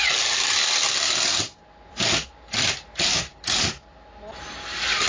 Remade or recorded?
recorded